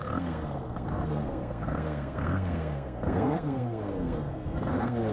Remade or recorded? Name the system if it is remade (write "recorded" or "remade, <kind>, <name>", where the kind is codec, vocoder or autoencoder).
remade, codec, SNAC